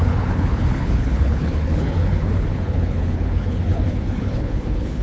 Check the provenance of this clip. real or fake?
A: fake